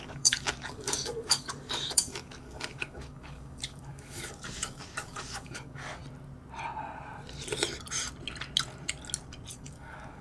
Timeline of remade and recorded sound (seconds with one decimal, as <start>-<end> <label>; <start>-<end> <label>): 0.0-6.0 remade; 6.0-9.5 recorded; 9.5-10.2 remade